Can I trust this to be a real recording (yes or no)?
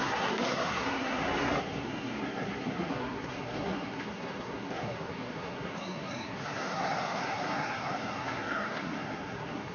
no